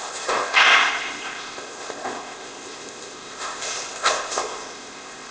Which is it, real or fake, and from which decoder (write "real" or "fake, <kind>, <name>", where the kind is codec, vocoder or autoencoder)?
fake, codec, ZipCodec